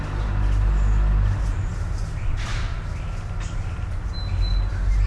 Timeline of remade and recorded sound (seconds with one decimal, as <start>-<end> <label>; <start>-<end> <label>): 0.0-5.1 recorded

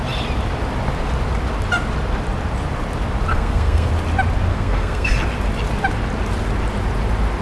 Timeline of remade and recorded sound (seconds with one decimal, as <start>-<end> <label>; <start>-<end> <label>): 0.0-3.3 recorded; 3.3-3.9 remade; 3.9-4.5 recorded; 4.5-5.1 remade; 5.1-7.4 recorded

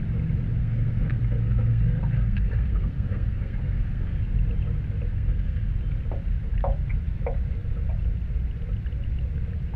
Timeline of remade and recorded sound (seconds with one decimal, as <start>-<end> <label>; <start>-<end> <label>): 0.0-0.6 recorded; 0.6-4.2 remade; 4.2-5.1 recorded; 5.1-5.7 remade; 5.7-9.8 recorded

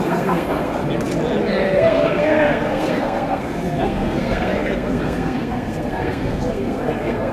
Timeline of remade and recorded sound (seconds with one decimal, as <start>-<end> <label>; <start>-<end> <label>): 0.0-0.8 remade; 0.8-1.5 recorded; 1.5-7.3 remade

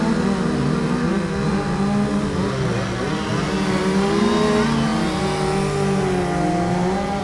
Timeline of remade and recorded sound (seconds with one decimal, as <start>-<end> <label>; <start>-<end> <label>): 0.0-7.2 recorded